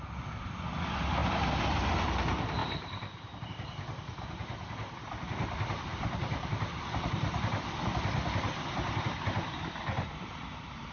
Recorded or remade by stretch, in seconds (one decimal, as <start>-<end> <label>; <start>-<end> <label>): 0.0-1.2 recorded; 1.2-1.8 remade; 1.8-2.6 recorded; 2.6-3.5 remade; 3.5-5.9 recorded; 5.9-10.9 remade

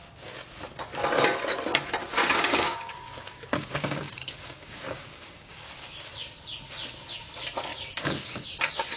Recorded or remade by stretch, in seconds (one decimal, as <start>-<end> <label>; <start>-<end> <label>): 0.0-2.2 recorded; 2.2-5.7 remade; 5.7-7.7 recorded; 7.7-8.6 remade; 8.6-9.0 recorded

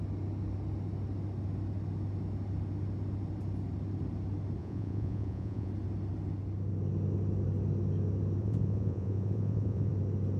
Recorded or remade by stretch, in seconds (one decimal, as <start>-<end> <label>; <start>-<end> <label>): 0.0-4.6 recorded; 4.6-5.7 remade; 5.7-8.4 recorded; 8.4-9.9 remade; 9.9-10.4 recorded

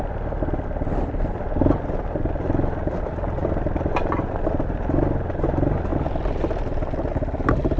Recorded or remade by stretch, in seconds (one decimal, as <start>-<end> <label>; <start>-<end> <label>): 0.0-7.8 recorded

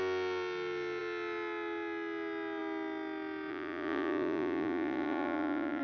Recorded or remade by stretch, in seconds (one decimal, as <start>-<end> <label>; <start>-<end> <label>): 0.0-3.5 recorded; 3.5-5.8 remade

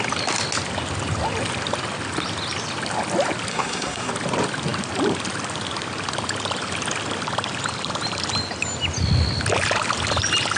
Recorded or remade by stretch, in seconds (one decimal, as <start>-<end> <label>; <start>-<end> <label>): 0.0-3.5 recorded; 3.5-4.1 remade; 4.1-10.6 recorded

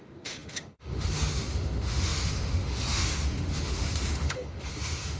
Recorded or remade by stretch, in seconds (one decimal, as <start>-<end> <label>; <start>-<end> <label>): 0.0-5.2 remade